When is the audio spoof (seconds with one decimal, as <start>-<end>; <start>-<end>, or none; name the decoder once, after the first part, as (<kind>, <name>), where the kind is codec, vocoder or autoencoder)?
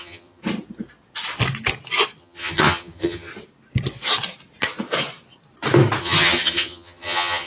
0.0-0.4 (vocoder, HiFi-GAN); 2.2-3.3; 6.0-7.5